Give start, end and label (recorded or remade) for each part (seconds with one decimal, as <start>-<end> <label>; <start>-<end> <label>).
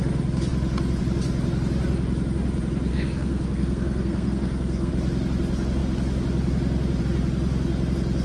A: 0.0-2.9 recorded; 2.9-4.9 remade; 4.9-8.2 recorded